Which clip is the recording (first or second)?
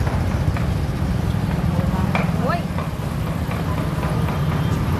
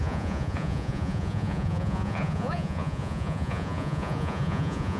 first